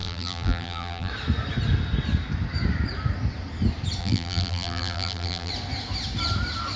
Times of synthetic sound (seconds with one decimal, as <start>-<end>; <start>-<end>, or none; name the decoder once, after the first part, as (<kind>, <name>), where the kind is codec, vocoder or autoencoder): 0.0-1.1 (vocoder, BigVGAN v2); 4.0-5.5